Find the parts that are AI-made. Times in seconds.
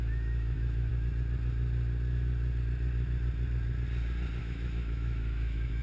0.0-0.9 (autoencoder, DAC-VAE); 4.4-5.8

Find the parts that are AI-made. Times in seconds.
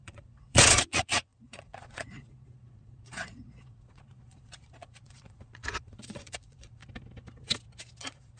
0.0-6.8 (vocoder, Vocos); 8.0-8.4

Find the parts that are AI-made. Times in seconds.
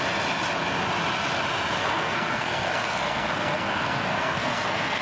1.8-5.0 (codec, SNAC)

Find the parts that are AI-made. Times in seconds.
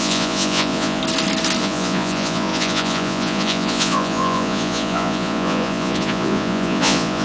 0.0-1.0 (vocoder, Vocos); 1.6-7.2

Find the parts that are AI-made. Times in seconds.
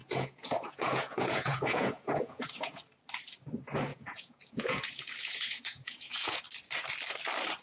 0.0-2.8 (vocoder, Vocos); 3.9-6.4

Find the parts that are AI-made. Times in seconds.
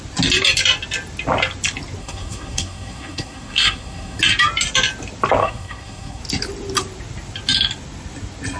2.0-4.2 (codec, SNAC); 5.4-6.2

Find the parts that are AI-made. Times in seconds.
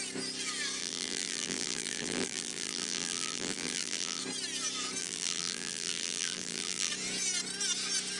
0.8-4.2 (vocoder, BigVGAN v2); 5.0-6.9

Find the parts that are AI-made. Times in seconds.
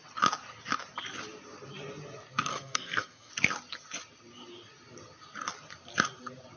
2.5-3.3 (codec, SNAC)